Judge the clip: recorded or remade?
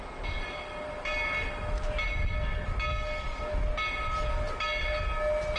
recorded